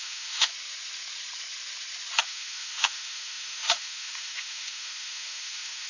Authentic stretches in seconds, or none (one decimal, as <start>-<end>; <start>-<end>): 0.5-2.2